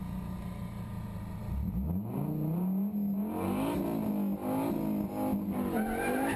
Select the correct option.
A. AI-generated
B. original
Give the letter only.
B